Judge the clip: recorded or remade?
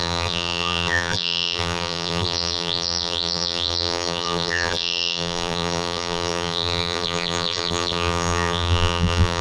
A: remade